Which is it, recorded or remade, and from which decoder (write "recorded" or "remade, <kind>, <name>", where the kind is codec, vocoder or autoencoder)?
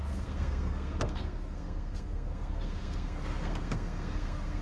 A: remade, codec, SNAC